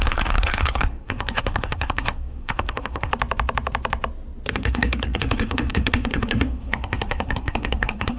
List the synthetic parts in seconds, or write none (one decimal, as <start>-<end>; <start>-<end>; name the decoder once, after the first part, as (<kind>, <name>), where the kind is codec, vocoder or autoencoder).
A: 0.0-3.1 (codec, SNAC); 4.5-8.2